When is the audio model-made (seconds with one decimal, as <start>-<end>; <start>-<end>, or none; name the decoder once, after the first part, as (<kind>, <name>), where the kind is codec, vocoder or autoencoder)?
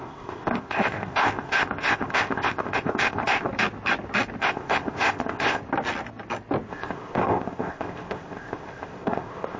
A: 0.0-3.5 (codec, ZipCodec); 4.4-5.6; 6.7-9.6